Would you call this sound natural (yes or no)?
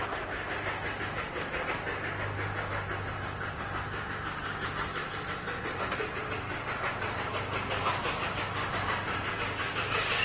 yes